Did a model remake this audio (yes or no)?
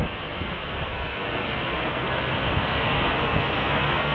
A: yes